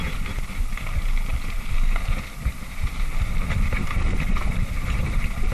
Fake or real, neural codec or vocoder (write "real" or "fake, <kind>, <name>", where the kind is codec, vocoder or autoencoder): real